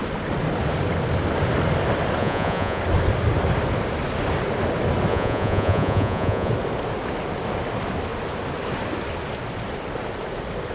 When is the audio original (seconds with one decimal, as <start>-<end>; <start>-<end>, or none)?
0.0-2.2; 2.8-5.1; 6.5-10.7